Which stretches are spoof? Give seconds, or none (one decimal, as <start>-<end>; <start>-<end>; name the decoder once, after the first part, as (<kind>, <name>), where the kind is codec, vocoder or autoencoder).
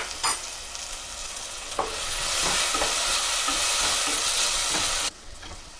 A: 1.2-2.3 (vocoder, WaveNeXt); 4.1-5.8